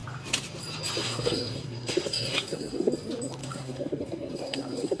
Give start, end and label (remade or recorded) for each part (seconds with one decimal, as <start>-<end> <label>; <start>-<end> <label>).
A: 0.0-1.0 recorded; 1.0-2.9 remade; 2.9-3.4 recorded; 3.4-5.0 remade